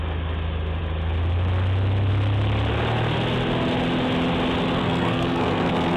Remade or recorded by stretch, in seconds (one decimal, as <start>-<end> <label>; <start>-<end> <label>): 0.0-4.8 recorded; 4.8-6.0 remade